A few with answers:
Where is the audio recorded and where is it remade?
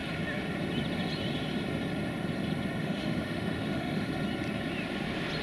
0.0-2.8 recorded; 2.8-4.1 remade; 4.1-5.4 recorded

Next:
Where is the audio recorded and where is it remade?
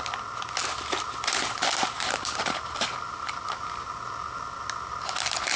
0.0-0.6 recorded; 0.6-4.0 remade; 4.0-5.6 recorded